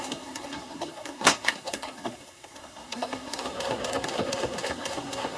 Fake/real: fake